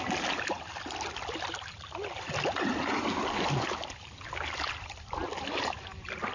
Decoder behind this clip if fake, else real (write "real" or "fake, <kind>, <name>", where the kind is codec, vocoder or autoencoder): real